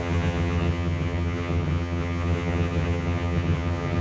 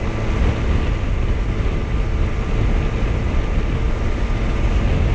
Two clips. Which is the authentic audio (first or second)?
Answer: second